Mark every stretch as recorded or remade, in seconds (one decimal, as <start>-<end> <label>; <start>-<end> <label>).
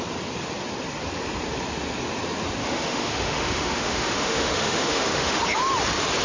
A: 0.0-2.6 recorded; 2.6-5.4 remade; 5.4-6.2 recorded